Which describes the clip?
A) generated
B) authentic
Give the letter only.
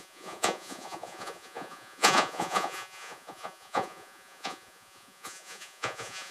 A